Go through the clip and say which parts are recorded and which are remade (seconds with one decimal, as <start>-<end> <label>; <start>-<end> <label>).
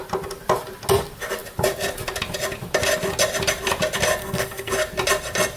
0.0-4.2 recorded; 4.2-4.7 remade; 4.7-5.6 recorded